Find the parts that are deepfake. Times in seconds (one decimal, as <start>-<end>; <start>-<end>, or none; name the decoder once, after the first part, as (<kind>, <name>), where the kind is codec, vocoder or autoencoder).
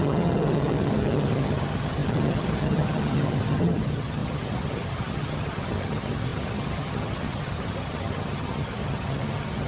0.0-9.7 (vocoder, HiFi-GAN)